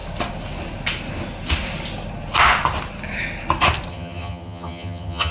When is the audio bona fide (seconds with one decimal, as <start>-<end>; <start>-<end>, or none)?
0.0-3.9